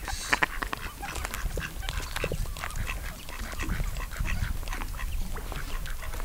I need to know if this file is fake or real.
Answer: real